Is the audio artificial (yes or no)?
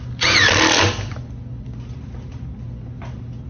no